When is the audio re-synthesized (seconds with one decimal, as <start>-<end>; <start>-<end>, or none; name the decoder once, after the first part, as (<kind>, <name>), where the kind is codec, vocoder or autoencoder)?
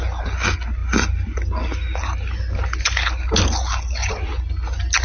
none